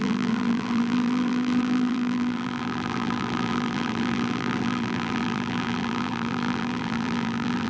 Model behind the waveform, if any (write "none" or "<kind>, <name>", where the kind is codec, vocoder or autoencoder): vocoder, BigVGAN v2